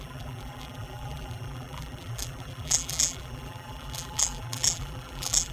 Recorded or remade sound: remade